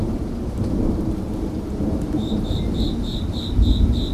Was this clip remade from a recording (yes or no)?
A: yes